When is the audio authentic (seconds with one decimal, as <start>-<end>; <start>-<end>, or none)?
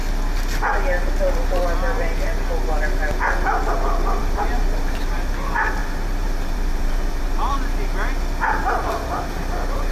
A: 0.0-4.2; 5.3-5.8; 7.5-9.9